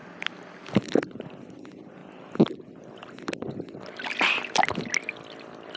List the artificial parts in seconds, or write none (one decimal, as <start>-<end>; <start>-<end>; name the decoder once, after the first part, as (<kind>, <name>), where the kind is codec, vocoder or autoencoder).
none